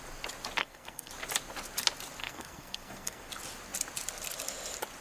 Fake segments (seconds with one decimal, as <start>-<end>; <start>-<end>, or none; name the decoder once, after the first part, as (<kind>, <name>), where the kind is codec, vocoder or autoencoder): 0.6-1.1 (codec, SNAC); 2.2-3.3